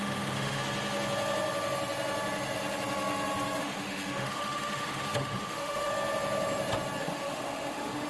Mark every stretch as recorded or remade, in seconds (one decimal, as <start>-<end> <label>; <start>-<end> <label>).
0.0-0.6 remade; 0.6-3.6 recorded; 3.6-5.9 remade; 5.9-7.0 recorded; 7.0-8.1 remade